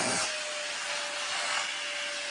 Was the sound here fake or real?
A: real